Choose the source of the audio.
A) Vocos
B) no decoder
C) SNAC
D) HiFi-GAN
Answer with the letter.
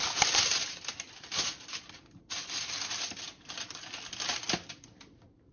B